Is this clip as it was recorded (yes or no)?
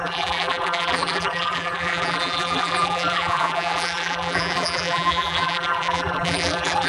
no